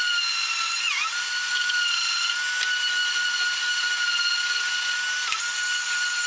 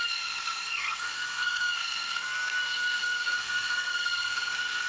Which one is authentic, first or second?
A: first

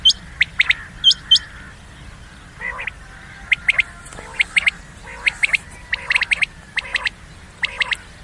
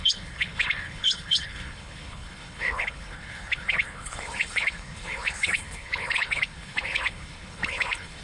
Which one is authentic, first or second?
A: first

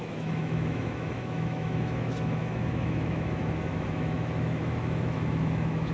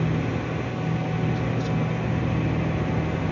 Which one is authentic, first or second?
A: second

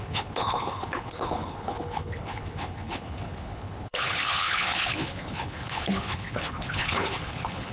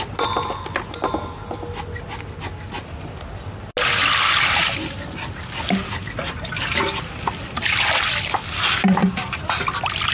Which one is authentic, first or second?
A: second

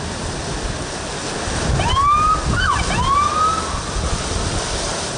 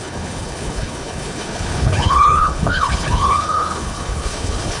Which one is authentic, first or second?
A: first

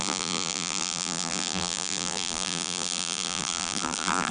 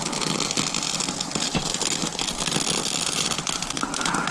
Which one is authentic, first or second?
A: second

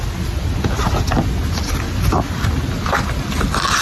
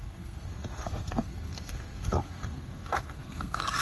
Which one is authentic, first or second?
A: first